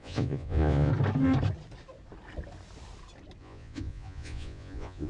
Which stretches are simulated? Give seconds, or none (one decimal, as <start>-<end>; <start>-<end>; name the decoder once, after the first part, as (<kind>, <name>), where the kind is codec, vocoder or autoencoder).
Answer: 0.0-0.9 (vocoder, Vocos); 3.4-5.1